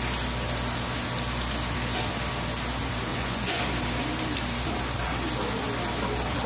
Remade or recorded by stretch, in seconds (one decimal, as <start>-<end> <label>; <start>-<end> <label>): 0.0-3.1 recorded; 3.1-3.6 remade; 3.6-6.5 recorded